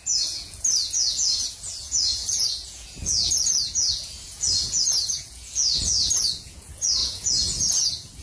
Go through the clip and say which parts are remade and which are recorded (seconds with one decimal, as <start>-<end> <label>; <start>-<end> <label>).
0.0-8.2 remade